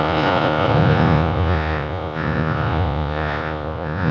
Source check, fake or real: fake